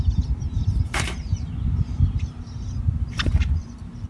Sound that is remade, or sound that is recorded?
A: remade